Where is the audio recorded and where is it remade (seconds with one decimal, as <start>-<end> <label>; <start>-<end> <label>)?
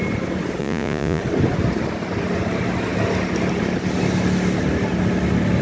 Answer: 0.0-0.6 recorded; 0.6-1.2 remade; 1.2-5.6 recorded